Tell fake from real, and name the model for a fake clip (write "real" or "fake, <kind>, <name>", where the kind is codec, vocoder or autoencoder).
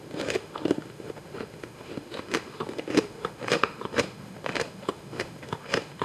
fake, autoencoder, DAC-VAE